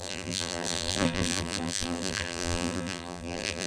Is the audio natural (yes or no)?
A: no